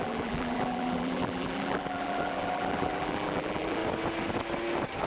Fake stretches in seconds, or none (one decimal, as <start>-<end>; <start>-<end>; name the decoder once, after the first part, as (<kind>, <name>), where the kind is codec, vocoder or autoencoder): 0.0-3.8 (vocoder, BigVGAN v2)

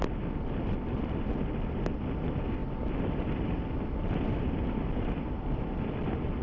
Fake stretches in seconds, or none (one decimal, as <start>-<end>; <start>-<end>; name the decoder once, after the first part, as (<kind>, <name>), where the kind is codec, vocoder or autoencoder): none

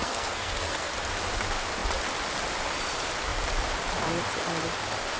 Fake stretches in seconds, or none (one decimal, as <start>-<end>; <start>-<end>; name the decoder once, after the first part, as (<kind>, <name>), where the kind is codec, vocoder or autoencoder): 0.0-0.9 (codec, SNAC)

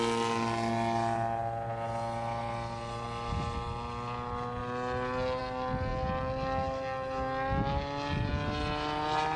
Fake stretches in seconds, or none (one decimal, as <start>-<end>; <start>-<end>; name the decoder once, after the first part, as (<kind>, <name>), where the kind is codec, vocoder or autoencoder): none

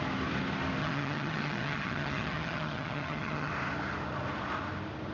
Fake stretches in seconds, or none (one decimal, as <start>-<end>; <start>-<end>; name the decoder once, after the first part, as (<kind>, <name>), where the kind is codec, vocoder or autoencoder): 0.8-3.5 (vocoder, HiFi-GAN)

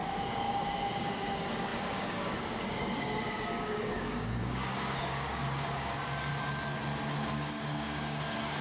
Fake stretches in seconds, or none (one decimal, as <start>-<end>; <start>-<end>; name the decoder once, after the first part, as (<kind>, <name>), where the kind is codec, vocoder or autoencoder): 0.0-6.3 (codec, DAC); 7.3-8.6

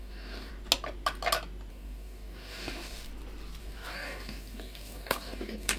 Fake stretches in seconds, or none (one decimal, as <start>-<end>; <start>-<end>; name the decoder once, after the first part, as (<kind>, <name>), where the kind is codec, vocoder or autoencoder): 0.0-0.5 (codec, DAC); 1.7-3.1; 3.6-5.8

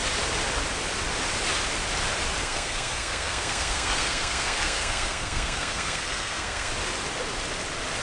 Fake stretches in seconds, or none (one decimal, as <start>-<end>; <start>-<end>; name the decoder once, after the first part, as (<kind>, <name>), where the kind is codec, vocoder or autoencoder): 2.4-6.7 (codec, SNAC)